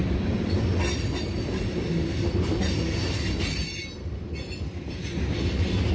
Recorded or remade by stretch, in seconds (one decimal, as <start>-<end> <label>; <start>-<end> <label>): 0.0-5.9 recorded